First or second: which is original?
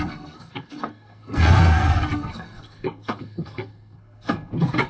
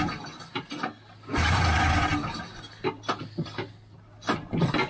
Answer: second